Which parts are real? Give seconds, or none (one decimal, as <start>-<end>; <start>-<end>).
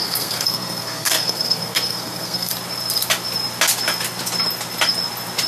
2.5-5.5